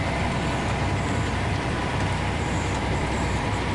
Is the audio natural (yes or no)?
no